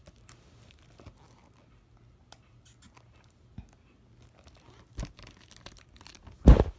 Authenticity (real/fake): real